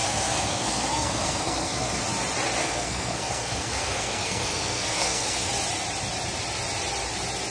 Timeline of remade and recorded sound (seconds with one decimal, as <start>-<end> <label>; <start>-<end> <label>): 0.0-2.0 remade; 2.0-2.6 recorded; 2.6-5.5 remade; 5.5-7.5 recorded